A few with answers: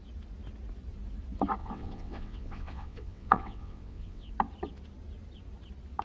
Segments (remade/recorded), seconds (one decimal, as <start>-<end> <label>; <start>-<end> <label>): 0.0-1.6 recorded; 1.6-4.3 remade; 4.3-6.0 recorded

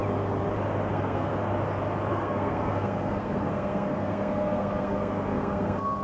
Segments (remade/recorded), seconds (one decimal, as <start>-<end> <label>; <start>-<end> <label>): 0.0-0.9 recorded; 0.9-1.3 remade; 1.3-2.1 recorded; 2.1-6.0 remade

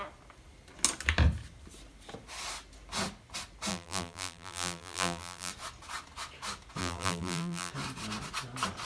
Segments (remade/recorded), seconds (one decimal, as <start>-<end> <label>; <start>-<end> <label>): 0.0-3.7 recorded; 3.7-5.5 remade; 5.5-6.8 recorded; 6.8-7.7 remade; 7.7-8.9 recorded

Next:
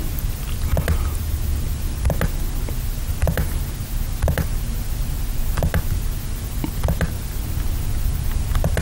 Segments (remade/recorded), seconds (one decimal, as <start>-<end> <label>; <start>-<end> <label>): 0.0-8.8 recorded